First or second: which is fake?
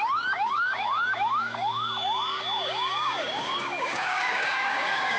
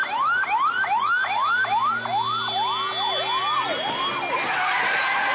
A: first